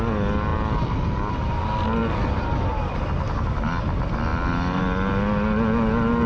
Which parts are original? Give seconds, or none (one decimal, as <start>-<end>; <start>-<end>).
0.0-6.3